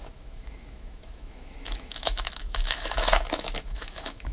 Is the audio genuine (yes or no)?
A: no